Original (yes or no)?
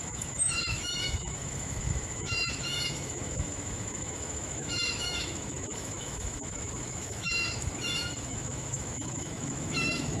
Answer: no